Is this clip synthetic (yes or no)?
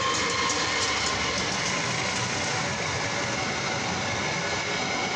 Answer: no